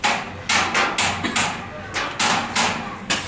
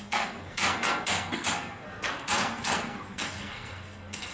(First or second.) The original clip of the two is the first